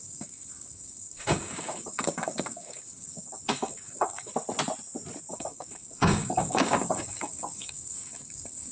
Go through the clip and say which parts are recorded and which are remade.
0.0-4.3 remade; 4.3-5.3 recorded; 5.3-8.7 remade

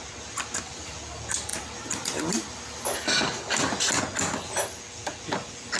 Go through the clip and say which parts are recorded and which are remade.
0.0-0.9 remade; 0.9-1.5 recorded; 1.5-4.0 remade; 4.0-5.8 recorded